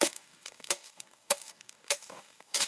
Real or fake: fake